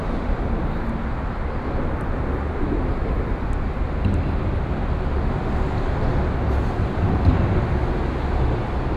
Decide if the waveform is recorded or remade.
recorded